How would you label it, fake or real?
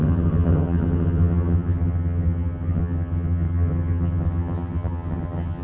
fake